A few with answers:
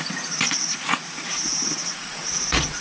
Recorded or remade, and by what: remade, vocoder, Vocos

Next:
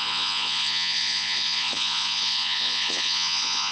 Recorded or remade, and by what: remade, vocoder, Vocos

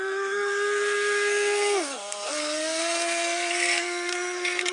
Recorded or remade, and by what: remade, codec, SNAC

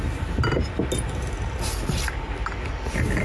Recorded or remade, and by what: recorded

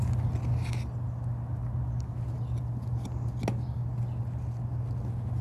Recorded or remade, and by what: recorded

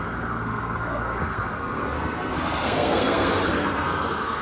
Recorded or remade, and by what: remade, codec, SNAC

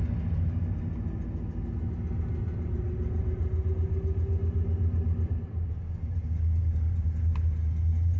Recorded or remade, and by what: recorded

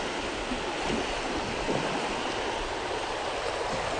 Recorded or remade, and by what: recorded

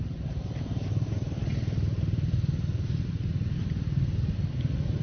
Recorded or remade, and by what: remade, vocoder, BigVGAN v2